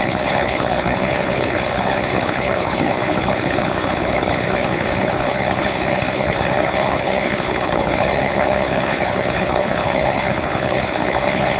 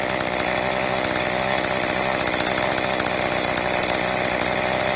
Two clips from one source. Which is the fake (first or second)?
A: first